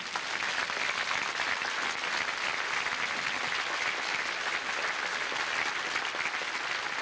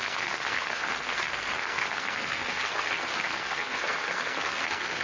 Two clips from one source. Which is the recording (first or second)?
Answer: first